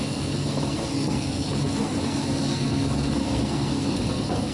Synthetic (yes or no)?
yes